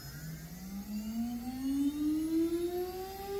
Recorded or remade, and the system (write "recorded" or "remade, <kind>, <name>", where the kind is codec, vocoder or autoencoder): recorded